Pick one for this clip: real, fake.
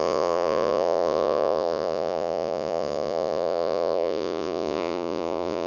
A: fake